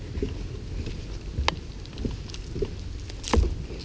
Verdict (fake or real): real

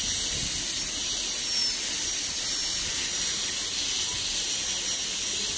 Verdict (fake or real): real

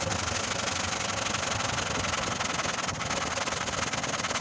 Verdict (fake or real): real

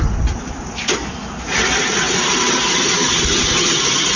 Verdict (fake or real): real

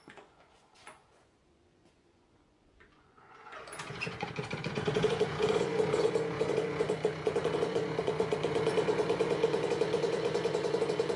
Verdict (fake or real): fake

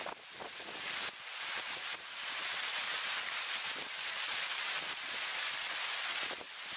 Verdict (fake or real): real